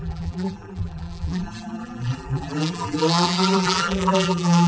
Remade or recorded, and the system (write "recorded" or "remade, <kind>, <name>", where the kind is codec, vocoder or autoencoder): remade, vocoder, BigVGAN v2